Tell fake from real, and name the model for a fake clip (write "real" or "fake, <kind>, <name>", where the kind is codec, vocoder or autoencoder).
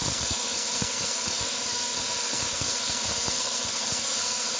fake, codec, SNAC